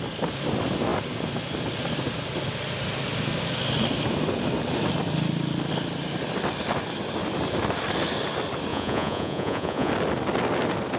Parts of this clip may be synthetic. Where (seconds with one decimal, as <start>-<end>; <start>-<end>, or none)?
8.7-9.9